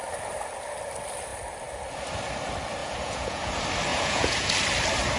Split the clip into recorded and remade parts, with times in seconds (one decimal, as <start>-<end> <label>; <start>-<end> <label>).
0.0-2.8 recorded; 2.8-3.5 remade; 3.5-3.9 recorded; 3.9-4.5 remade; 4.5-5.2 recorded